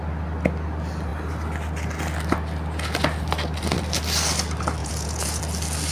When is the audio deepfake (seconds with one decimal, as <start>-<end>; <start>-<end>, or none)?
4.8-5.4